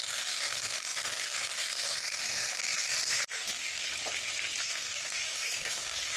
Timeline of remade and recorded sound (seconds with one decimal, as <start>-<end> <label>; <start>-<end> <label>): 0.0-3.9 remade; 3.9-4.6 recorded; 4.6-6.2 remade